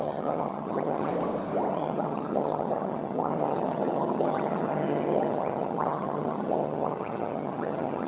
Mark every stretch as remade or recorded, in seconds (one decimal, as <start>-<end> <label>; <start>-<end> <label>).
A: 0.0-1.1 remade; 1.1-1.7 recorded; 1.7-8.1 remade